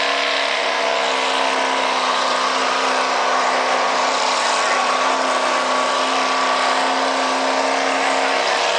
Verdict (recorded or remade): recorded